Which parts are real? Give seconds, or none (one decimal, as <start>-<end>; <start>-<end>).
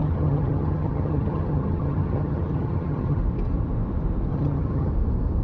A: 3.2-4.3; 4.9-5.4